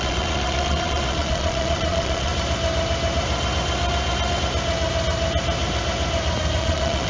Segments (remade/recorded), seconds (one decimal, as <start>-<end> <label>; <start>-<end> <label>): 0.0-2.3 remade; 2.3-6.6 recorded; 6.6-7.1 remade